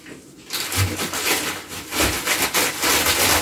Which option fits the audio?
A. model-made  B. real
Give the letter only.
B